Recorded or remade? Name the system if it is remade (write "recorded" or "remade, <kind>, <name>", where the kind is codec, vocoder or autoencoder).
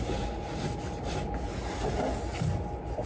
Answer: recorded